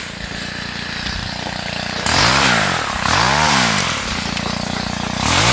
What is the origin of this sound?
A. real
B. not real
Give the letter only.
A